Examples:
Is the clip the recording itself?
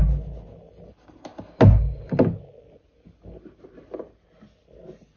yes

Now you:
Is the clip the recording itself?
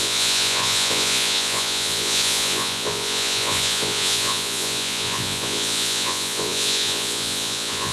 no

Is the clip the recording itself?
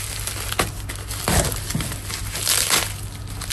yes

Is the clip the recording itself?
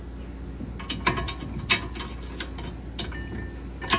yes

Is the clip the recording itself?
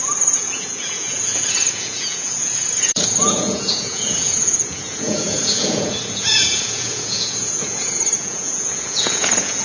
no